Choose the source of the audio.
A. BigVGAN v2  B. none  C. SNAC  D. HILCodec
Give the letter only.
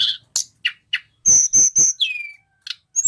B